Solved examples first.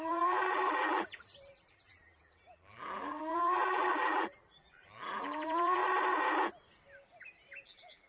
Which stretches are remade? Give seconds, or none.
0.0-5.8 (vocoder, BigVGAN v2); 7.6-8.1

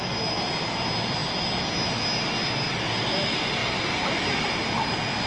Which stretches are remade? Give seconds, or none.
none

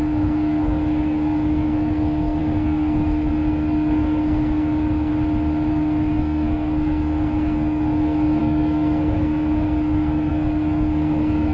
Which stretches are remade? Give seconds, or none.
0.0-5.1 (codec, SNAC); 5.7-11.5